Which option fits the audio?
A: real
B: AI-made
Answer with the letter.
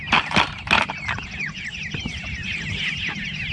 B